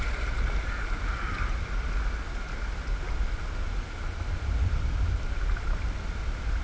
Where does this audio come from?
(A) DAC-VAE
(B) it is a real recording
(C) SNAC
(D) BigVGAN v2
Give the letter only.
B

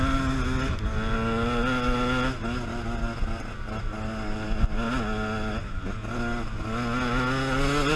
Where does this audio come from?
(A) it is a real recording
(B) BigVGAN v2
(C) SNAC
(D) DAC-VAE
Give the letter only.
A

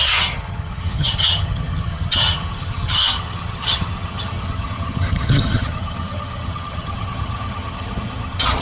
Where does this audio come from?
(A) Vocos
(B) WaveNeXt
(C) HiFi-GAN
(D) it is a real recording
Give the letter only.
C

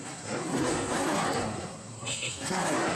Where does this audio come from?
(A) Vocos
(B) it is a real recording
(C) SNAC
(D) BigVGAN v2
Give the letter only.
C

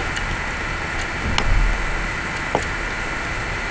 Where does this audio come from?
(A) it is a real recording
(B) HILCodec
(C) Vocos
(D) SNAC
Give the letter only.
A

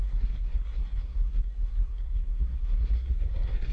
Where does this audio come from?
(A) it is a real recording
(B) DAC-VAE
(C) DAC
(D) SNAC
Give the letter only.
D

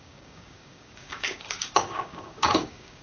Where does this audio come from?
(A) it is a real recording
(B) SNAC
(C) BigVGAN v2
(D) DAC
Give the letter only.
D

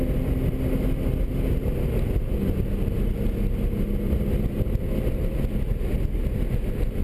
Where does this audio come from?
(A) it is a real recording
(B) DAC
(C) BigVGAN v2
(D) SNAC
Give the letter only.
A